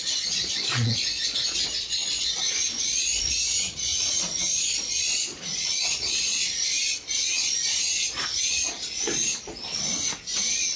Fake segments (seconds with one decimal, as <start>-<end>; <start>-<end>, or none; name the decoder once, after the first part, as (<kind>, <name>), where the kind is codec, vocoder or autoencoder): 0.0-10.8 (vocoder, Vocos)

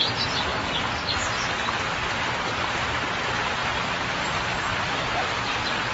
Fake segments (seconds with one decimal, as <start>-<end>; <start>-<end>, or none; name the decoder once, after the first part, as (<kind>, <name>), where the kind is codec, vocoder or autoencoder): none

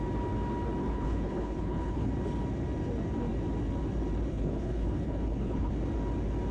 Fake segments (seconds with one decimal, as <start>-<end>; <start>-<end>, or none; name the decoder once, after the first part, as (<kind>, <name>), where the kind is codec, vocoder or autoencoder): 0.8-2.1 (codec, HILCodec); 4.3-5.7

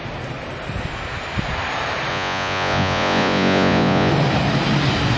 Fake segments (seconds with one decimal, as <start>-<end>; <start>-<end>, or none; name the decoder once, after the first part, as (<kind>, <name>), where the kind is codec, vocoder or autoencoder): 2.1-4.1 (vocoder, Vocos)

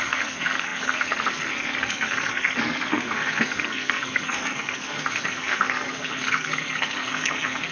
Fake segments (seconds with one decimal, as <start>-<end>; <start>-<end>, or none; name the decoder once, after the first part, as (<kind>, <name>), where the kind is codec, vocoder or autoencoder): 0.0-7.7 (codec, SNAC)

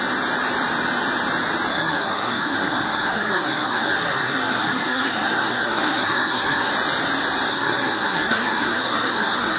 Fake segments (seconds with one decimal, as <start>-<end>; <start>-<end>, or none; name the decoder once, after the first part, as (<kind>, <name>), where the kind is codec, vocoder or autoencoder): 1.7-6.7 (codec, SNAC); 7.5-9.6

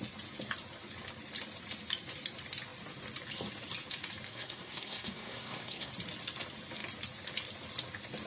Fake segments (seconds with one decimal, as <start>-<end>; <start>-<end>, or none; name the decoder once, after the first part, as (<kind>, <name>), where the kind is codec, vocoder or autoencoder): 4.3-5.9 (codec, SNAC)

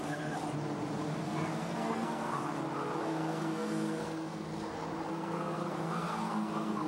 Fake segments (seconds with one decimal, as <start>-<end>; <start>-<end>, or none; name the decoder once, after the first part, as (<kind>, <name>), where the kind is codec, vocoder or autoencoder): 0.0-0.4 (codec, SNAC); 1.2-2.4; 3.0-4.5; 5.1-6.9